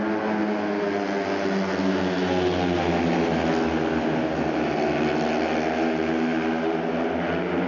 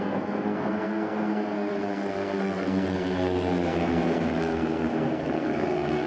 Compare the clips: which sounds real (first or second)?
first